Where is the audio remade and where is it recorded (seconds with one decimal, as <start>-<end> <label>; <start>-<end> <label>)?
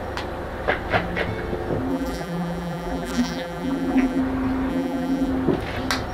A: 0.0-1.9 recorded; 1.9-4.2 remade; 4.2-4.7 recorded; 4.7-5.3 remade; 5.3-6.1 recorded